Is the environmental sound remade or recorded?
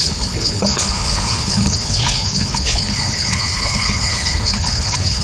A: remade